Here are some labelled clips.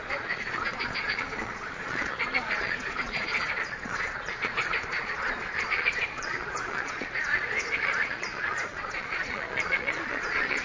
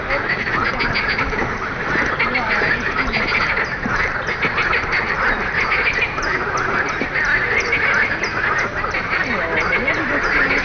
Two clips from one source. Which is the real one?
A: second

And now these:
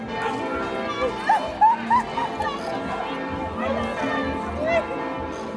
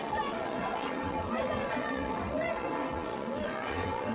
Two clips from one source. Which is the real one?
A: first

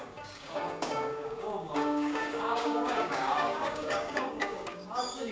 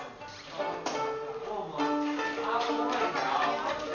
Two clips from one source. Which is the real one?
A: second